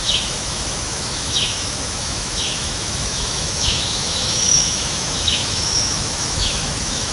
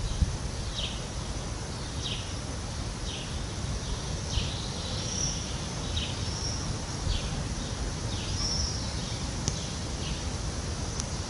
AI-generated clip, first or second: first